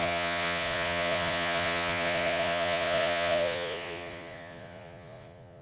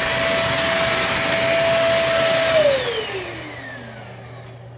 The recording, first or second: second